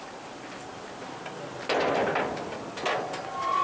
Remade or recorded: recorded